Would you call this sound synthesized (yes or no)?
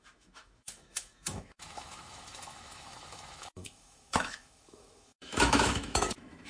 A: yes